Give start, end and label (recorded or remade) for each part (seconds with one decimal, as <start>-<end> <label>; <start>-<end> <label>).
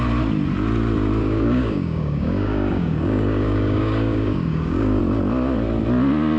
0.0-1.2 recorded; 1.2-5.0 remade; 5.0-6.4 recorded